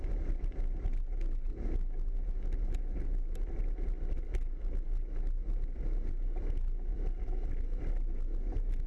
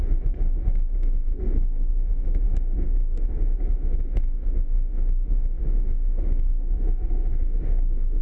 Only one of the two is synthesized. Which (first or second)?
second